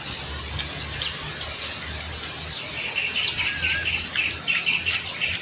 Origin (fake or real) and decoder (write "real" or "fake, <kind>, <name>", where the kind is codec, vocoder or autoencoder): real